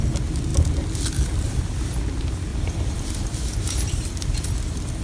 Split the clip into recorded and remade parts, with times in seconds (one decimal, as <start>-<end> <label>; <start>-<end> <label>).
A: 0.0-2.5 recorded; 2.5-5.0 remade